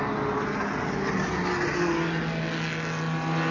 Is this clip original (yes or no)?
yes